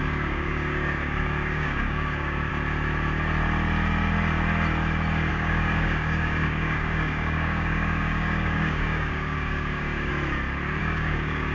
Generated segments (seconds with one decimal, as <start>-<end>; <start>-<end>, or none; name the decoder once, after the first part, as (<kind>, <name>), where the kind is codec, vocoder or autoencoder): 0.0-2.5 (codec, DAC); 5.3-10.1; 10.8-11.5